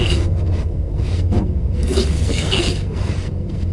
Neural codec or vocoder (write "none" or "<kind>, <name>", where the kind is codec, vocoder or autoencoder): codec, SNAC